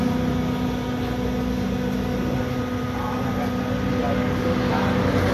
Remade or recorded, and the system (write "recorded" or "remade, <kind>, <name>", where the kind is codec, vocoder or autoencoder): recorded